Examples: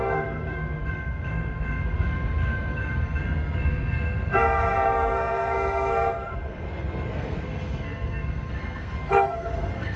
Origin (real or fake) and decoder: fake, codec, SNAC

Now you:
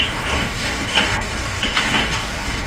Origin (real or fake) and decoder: fake, codec, DAC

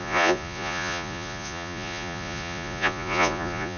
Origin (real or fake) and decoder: fake, vocoder, Vocos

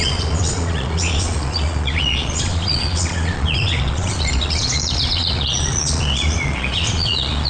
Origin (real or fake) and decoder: fake, vocoder, Vocos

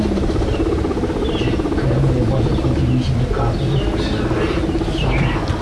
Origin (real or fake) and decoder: real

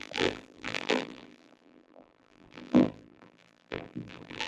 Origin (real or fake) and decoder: fake, vocoder, BigVGAN v2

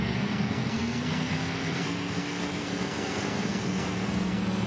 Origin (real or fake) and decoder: fake, codec, SNAC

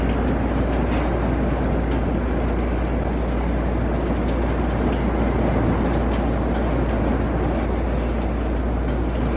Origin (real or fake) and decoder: real